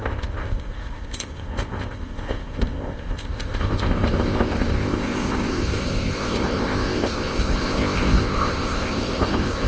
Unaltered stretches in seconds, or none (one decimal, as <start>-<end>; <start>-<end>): none